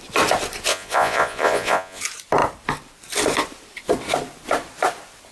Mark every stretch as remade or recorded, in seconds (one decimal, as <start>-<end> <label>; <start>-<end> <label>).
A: 0.0-0.7 recorded; 0.7-2.0 remade; 2.0-5.3 recorded